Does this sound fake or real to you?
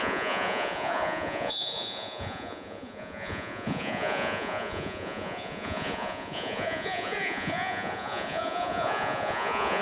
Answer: fake